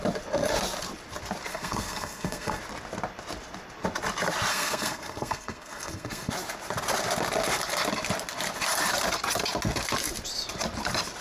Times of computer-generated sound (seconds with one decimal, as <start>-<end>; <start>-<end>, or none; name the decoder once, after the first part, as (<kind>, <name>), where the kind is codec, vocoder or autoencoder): 1.5-2.6 (codec, SNAC); 4.5-6.3